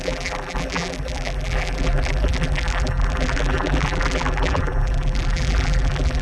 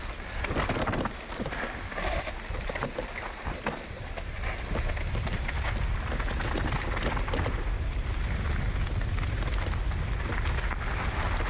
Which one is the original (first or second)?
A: second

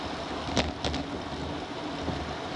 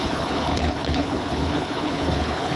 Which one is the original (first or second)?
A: first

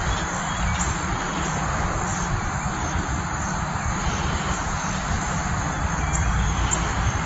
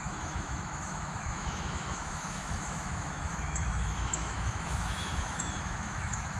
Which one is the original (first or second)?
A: first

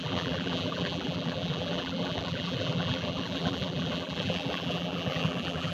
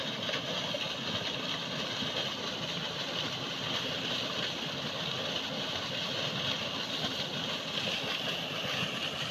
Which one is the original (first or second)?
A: second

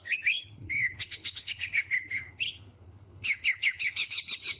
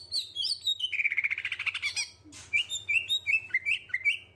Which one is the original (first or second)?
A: second